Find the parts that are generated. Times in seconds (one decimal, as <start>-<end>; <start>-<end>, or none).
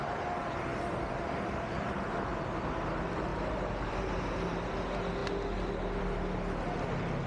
0.7-2.4; 3.3-4.7